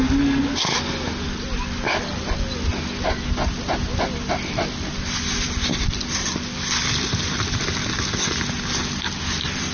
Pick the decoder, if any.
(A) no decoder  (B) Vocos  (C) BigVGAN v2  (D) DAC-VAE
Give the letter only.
A